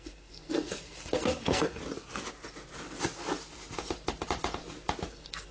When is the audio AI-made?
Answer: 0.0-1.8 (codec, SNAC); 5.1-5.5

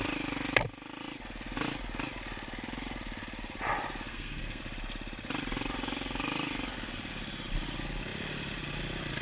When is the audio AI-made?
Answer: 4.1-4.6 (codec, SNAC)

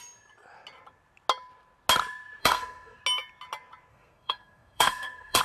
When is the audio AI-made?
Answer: 2.4-3.0 (codec, SNAC); 3.9-5.4

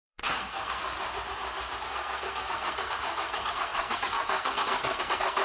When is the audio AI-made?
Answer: 0.0-0.9 (codec, SNAC); 1.8-5.4

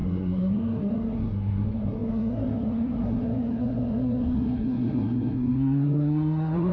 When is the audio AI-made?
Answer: 0.0-6.7 (codec, SNAC)

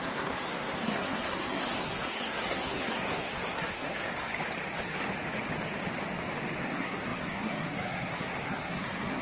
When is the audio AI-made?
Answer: 0.0-4.3 (codec, SNAC); 6.6-9.2

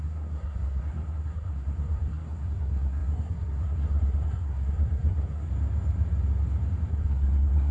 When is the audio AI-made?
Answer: 0.0-5.5 (codec, SNAC); 6.9-7.7